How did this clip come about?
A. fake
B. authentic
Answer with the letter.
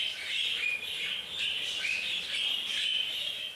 A